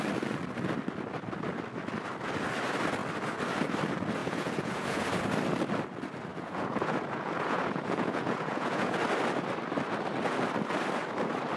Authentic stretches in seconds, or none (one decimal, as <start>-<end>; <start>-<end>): 0.0-4.2; 5.0-6.3; 9.0-11.6